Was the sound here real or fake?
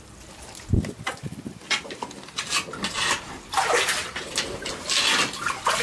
real